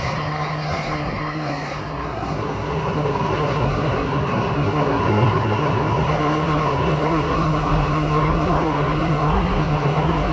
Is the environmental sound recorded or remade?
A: remade